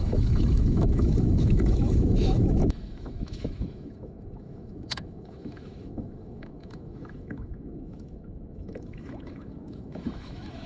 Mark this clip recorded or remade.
remade